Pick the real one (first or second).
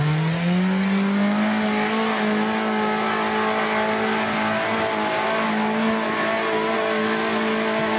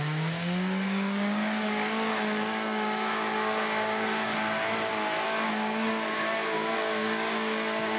first